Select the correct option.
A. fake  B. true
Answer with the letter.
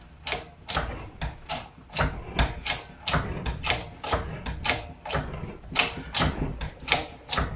B